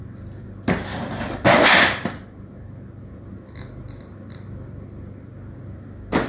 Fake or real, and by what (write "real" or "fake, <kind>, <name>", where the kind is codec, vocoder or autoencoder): real